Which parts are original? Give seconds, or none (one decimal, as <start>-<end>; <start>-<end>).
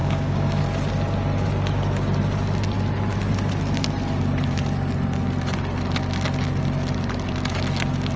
0.6-8.2